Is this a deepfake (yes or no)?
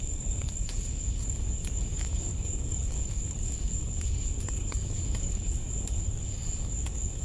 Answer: yes